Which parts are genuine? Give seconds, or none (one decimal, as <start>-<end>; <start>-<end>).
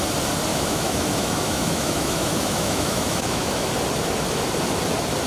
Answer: 0.0-0.5; 3.7-5.3